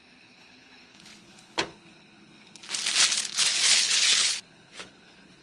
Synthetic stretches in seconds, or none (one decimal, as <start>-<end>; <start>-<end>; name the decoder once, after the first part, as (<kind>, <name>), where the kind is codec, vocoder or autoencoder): 0.0-2.6 (codec, HILCodec); 3.1-5.4

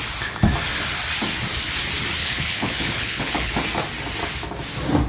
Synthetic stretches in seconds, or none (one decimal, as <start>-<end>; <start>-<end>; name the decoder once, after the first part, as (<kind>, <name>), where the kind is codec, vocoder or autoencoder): 2.2-3.5 (codec, HILCodec)

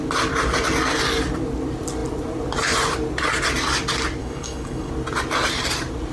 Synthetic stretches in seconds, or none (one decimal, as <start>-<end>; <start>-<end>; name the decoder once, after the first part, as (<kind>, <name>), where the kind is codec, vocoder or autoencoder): 4.2-4.9 (codec, DAC)

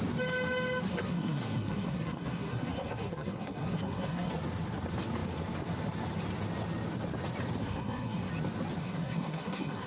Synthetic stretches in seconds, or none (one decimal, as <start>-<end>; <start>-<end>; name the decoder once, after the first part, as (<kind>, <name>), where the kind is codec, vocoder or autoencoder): 0.9-4.3 (codec, SNAC); 7.6-8.3; 8.8-9.9